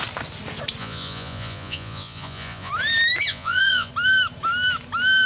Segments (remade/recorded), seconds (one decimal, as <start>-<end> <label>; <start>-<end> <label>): 0.0-0.8 recorded; 0.8-2.7 remade; 2.7-3.3 recorded; 3.3-3.9 remade; 3.9-5.3 recorded